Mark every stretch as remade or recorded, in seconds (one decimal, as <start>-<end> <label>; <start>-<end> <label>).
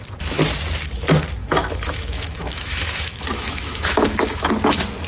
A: 0.0-1.4 recorded; 1.4-4.5 remade; 4.5-5.1 recorded